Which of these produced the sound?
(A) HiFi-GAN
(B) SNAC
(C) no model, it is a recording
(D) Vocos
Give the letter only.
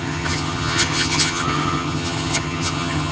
A